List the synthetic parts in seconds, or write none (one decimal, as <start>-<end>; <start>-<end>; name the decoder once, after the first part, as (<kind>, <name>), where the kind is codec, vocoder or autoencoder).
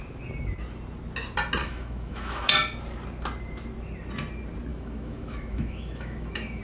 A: 1.6-2.5 (autoencoder, DAC-VAE); 4.7-6.6